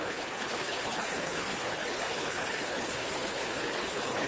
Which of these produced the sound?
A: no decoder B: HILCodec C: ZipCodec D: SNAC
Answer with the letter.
B